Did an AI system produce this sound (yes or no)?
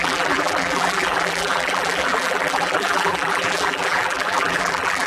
yes